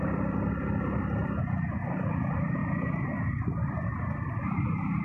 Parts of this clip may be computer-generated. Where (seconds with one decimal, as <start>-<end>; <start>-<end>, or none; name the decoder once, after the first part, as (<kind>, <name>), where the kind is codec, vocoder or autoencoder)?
0.0-1.2 (vocoder, BigVGAN v2); 1.8-2.6; 3.7-5.0